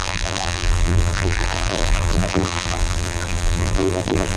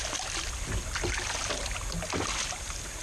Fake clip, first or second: first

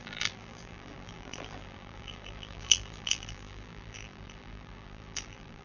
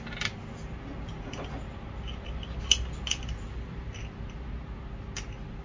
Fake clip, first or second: first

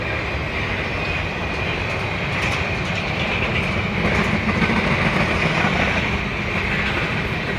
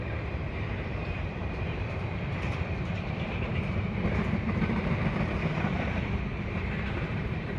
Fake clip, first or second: second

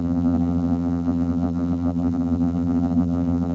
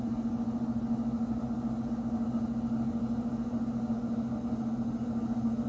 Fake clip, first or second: first